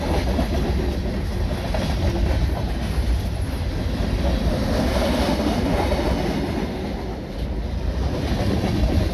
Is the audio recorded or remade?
recorded